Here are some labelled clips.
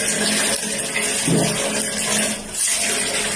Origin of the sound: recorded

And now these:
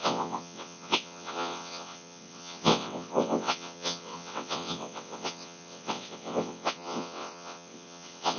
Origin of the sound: remade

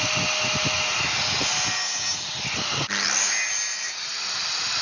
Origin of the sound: recorded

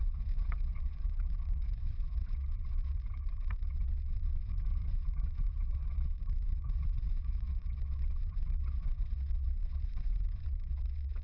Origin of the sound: remade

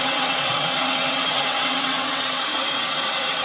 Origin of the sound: remade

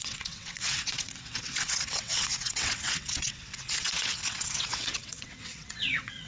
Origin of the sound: remade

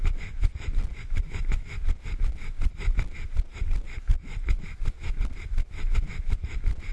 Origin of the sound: recorded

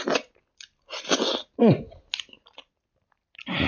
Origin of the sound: recorded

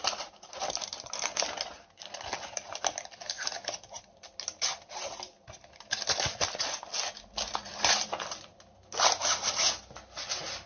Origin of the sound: recorded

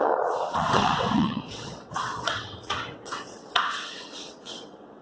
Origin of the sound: remade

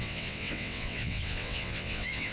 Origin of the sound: remade